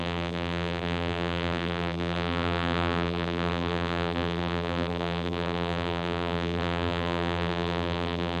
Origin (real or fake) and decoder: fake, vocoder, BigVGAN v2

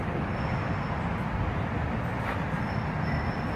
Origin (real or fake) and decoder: real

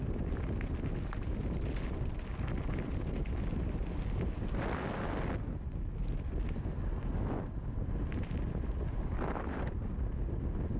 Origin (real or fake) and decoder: real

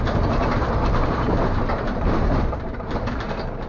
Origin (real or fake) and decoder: fake, vocoder, BigVGAN v2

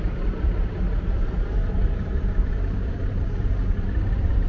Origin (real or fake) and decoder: fake, vocoder, BigVGAN v2